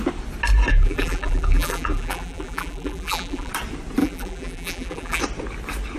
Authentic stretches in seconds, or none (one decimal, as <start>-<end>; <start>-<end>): 0.0-0.7; 3.5-4.0; 5.2-6.0